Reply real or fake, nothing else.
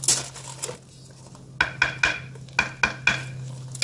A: real